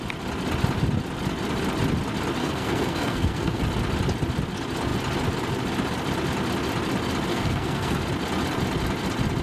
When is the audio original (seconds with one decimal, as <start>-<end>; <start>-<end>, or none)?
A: 0.0-2.4; 3.6-7.3; 8.0-9.4